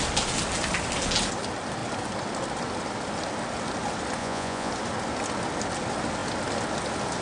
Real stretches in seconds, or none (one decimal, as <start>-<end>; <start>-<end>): 0.0-4.2; 4.7-7.2